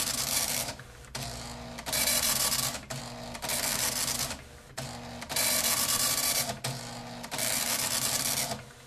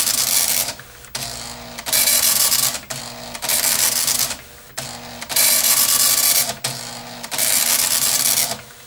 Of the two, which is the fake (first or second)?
first